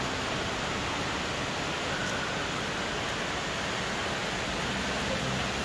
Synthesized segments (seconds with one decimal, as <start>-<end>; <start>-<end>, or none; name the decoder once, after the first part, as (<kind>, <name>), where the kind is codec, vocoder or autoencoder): none